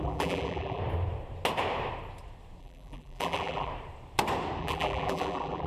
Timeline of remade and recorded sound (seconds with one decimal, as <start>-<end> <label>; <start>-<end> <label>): 0.0-0.8 remade; 0.8-2.6 recorded; 2.6-3.7 remade; 3.7-4.6 recorded; 4.6-5.7 remade